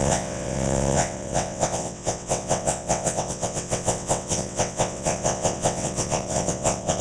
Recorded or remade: remade